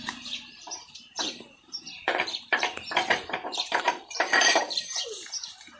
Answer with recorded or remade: remade